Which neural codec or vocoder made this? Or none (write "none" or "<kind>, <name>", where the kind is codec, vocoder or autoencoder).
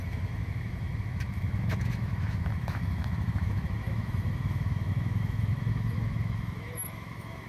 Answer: autoencoder, DAC-VAE